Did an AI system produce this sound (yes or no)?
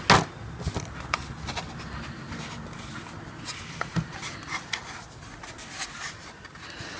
no